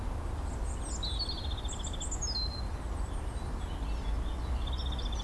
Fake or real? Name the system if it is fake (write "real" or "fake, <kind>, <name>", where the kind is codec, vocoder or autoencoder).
real